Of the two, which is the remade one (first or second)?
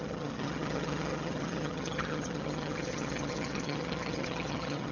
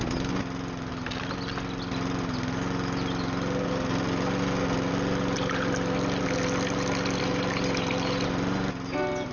first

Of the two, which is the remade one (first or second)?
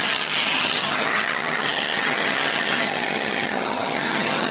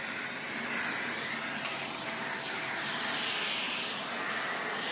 first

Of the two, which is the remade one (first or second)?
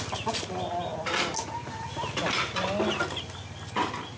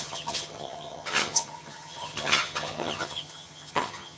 second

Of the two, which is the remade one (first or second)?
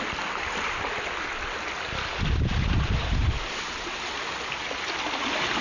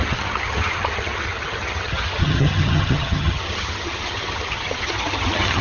second